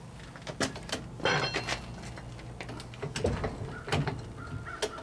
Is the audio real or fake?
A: real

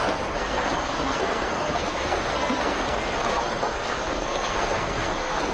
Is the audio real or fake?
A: fake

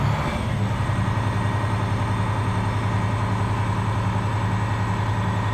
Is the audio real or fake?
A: real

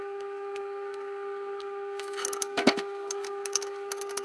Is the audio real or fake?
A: fake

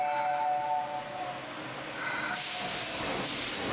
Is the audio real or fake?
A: real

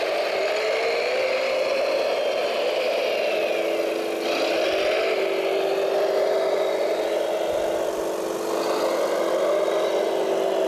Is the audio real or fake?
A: real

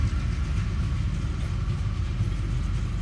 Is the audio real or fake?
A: real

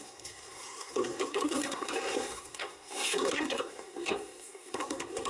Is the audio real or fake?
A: fake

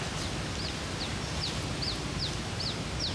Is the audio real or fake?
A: real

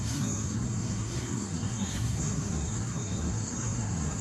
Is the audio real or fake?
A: fake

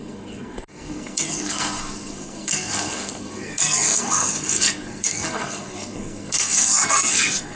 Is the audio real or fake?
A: fake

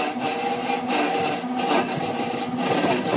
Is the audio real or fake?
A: real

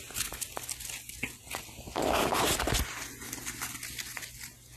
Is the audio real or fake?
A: real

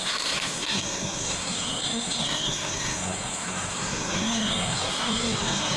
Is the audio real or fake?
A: fake